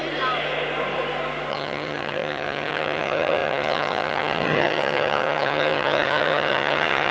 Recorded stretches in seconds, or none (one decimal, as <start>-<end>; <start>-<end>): 0.0-1.5